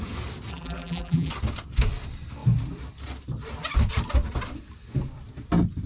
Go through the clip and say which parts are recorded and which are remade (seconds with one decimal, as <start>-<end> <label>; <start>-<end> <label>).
0.0-0.5 recorded; 0.5-1.3 remade; 1.3-5.9 recorded